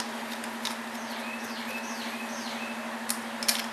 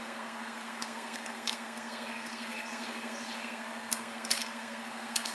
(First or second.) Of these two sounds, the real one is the first